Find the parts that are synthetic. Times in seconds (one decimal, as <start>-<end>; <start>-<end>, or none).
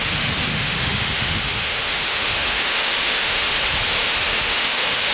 0.5-3.6; 4.0-5.1